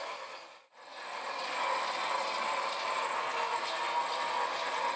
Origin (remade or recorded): recorded